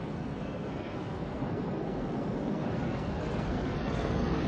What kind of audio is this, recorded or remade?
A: remade